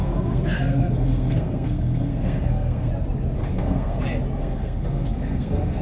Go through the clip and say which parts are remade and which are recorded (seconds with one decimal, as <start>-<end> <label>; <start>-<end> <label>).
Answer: 0.0-2.9 remade; 2.9-3.4 recorded; 3.4-4.0 remade; 4.0-4.4 recorded; 4.4-5.8 remade